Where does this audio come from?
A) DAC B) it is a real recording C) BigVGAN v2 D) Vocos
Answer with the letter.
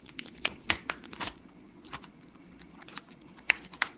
D